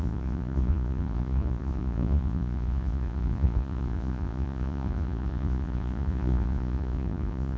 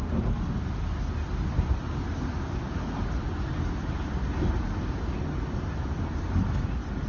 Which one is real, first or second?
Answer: second